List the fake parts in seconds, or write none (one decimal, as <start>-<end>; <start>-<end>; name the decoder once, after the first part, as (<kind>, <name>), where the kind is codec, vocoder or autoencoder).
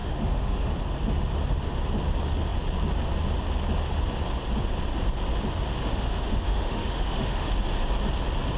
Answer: 0.0-0.7 (autoencoder, DAC-VAE); 5.9-7.5